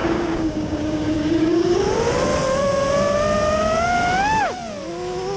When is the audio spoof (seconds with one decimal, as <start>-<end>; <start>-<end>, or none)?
0.0-1.8